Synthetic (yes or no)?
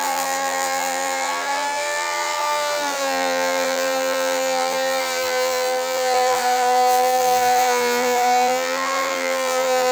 yes